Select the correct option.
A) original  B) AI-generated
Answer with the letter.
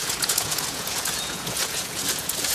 B